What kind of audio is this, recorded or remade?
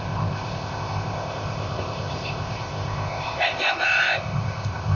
remade